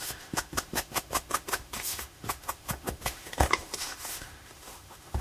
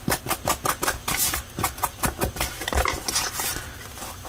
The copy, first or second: first